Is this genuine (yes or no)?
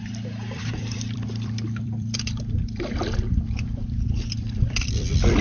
no